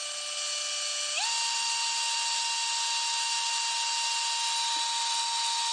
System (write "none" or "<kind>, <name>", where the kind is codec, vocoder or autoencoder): none